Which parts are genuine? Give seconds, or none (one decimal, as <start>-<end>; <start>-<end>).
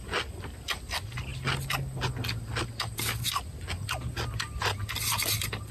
0.0-5.7